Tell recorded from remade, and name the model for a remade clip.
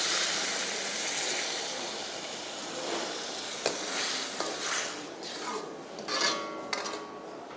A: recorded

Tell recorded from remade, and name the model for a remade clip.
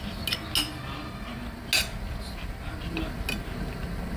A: recorded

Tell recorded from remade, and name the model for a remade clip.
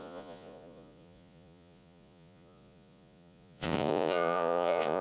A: remade, vocoder, Vocos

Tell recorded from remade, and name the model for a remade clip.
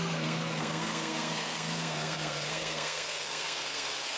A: remade, codec, SNAC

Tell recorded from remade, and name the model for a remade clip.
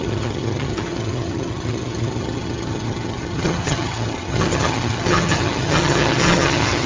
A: remade, vocoder, HiFi-GAN